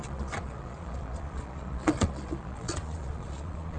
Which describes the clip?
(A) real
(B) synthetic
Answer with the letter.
B